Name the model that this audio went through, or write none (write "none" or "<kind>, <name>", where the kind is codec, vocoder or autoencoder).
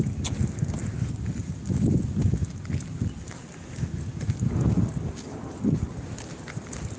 none